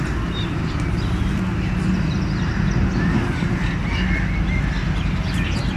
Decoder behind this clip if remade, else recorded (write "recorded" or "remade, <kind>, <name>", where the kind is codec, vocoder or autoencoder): recorded